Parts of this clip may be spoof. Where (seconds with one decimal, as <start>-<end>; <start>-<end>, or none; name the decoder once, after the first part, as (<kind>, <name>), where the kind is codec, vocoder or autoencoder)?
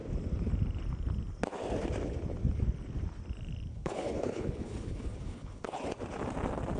3.7-6.0 (codec, HILCodec)